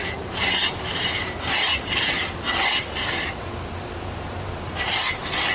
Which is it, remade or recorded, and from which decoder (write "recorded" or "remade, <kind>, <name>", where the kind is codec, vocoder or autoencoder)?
remade, vocoder, BigVGAN v2